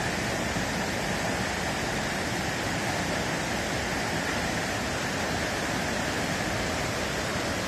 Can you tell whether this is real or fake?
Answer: real